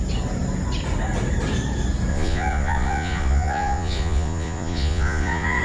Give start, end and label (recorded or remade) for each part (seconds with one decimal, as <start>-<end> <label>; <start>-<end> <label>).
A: 0.0-2.1 recorded; 2.1-5.6 remade